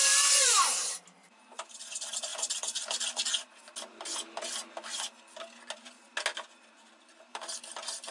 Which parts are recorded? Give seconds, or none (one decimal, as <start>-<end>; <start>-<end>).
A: 0.0-8.1